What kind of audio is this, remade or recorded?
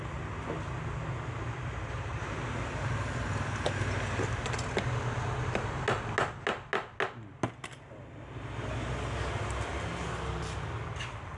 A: recorded